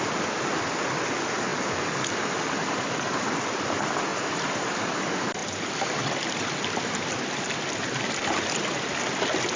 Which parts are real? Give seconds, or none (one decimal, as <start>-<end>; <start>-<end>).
0.0-9.6

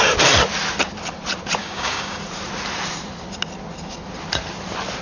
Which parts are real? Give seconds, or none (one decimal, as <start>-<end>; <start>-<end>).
0.0-1.6; 2.2-5.0

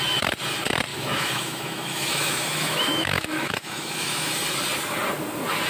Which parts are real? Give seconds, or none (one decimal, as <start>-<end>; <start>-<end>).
0.0-0.9; 4.3-5.7